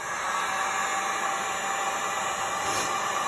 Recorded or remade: recorded